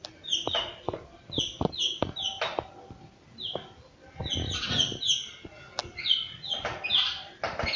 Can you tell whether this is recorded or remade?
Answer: recorded